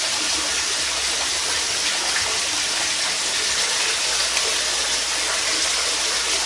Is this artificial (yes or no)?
no